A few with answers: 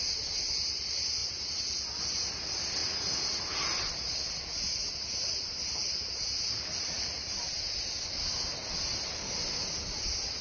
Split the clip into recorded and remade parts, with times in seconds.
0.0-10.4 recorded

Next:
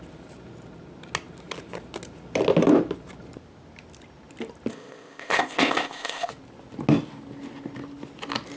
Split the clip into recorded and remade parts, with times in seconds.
0.0-4.7 recorded; 4.7-6.3 remade; 6.3-8.6 recorded

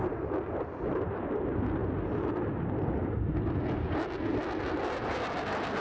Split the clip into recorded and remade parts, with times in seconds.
0.0-5.8 recorded

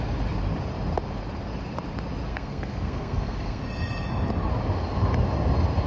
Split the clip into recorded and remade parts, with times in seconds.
0.0-2.3 recorded; 2.3-3.6 remade; 3.6-5.9 recorded

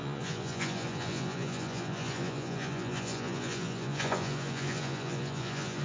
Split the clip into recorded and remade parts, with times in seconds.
0.0-5.8 remade

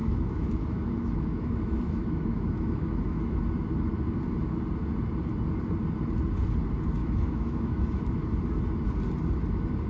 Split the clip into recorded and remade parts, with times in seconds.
0.0-3.4 remade; 3.4-7.0 recorded; 7.0-8.1 remade; 8.1-9.9 recorded

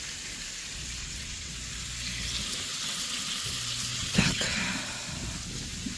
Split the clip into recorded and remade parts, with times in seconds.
0.0-1.0 recorded; 1.0-1.5 remade; 1.5-2.7 recorded; 2.7-3.3 remade; 3.3-3.9 recorded; 3.9-4.6 remade; 4.6-6.0 recorded

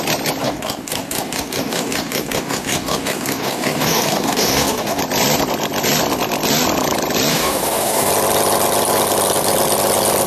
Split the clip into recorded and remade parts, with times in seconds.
0.0-0.4 recorded; 0.4-5.0 remade; 5.0-7.3 recorded; 7.3-8.1 remade; 8.1-10.3 recorded